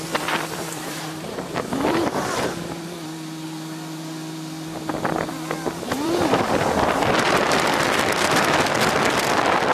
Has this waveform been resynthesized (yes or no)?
yes